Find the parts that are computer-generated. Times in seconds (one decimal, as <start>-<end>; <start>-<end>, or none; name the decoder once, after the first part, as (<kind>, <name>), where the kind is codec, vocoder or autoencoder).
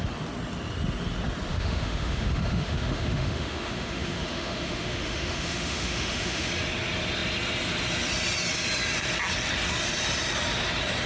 1.5-6.5 (autoencoder, DAC-VAE)